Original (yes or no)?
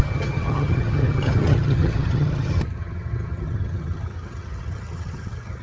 no